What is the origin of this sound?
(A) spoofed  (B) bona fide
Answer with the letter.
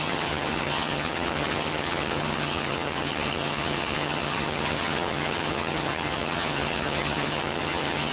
A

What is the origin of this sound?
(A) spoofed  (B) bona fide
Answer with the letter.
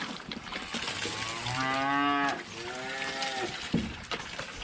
B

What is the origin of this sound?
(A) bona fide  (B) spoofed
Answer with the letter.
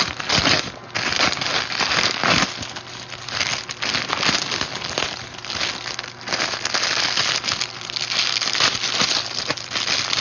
A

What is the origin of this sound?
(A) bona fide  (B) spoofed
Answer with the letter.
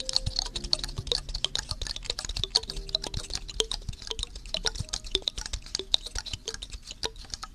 A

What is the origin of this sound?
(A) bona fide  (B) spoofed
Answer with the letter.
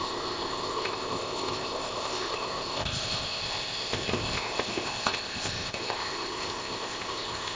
B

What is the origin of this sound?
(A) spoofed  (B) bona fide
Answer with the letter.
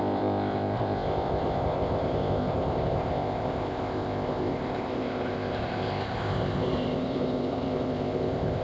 A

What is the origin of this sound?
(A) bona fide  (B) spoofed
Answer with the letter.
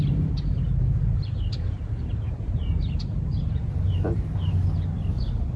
A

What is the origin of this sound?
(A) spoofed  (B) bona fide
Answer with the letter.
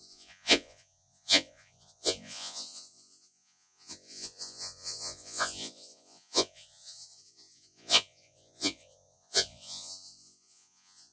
A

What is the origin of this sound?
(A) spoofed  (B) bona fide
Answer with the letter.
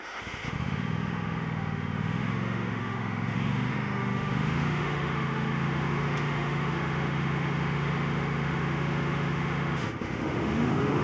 A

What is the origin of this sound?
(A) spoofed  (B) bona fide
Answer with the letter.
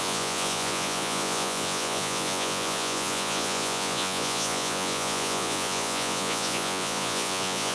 A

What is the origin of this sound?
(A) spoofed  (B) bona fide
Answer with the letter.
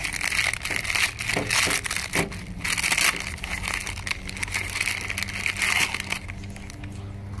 B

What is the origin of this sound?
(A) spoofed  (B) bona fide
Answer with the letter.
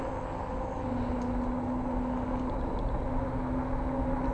B